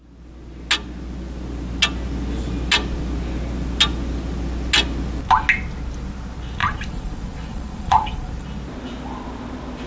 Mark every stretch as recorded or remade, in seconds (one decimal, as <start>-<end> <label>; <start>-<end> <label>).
0.0-6.6 recorded; 6.6-8.3 remade; 8.3-9.9 recorded